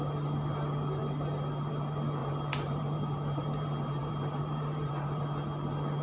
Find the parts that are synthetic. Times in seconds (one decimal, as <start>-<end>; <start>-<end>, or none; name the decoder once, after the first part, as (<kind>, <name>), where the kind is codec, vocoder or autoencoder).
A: 2.2-5.2 (vocoder, BigVGAN v2)